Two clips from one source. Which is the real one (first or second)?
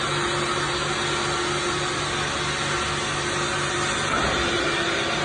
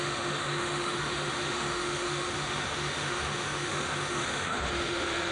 first